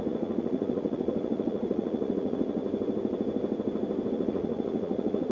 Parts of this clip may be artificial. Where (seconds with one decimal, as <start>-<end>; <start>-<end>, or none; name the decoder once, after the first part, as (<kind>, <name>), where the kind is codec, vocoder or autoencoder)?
0.0-2.6 (vocoder, Vocos); 4.1-5.3